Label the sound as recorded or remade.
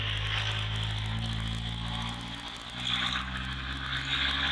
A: recorded